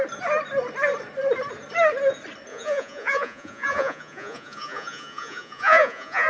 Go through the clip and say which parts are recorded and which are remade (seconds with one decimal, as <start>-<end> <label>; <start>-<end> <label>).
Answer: 0.0-2.5 recorded; 2.5-6.3 remade